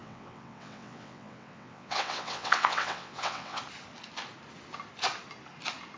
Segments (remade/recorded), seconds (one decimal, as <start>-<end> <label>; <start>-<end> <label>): 0.0-3.6 remade; 3.6-6.0 recorded